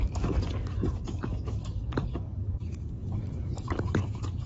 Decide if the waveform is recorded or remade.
remade